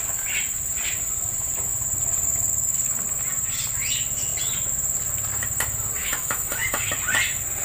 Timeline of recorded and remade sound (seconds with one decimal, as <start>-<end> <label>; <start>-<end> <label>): 0.0-6.0 recorded; 6.0-6.9 remade; 6.9-7.6 recorded